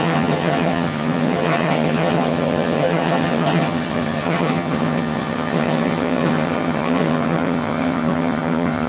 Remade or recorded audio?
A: remade